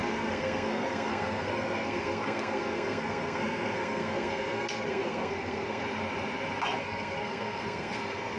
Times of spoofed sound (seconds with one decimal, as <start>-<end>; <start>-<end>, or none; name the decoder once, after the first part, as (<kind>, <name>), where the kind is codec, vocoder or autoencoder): 0.0-5.8 (codec, SNAC); 6.8-8.4